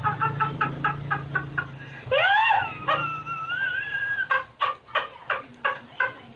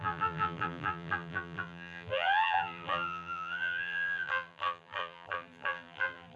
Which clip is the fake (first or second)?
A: second